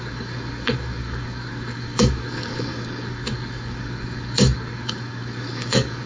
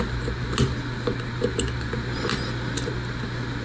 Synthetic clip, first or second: first